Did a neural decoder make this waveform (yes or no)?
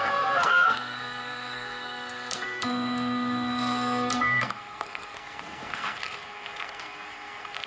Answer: yes